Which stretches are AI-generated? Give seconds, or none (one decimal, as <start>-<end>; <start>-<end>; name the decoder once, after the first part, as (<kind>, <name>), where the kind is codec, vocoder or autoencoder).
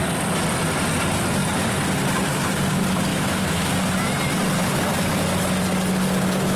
3.1-3.7 (autoencoder, DAC-VAE)